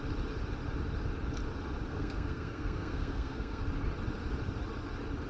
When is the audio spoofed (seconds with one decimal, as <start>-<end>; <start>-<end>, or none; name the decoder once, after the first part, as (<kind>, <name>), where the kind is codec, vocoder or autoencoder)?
1.9-3.6 (codec, SNAC)